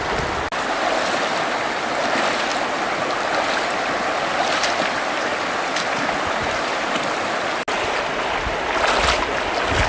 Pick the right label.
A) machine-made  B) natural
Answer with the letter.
B